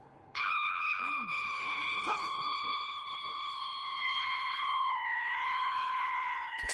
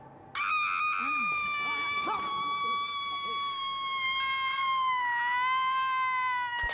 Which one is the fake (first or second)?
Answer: first